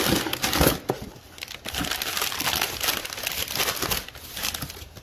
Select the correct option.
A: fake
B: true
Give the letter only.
B